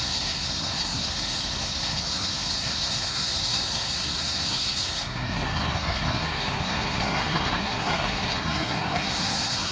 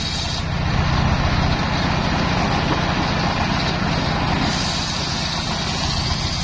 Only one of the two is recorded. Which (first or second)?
second